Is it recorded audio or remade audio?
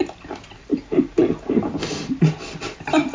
recorded